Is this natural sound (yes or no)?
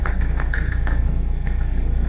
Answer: no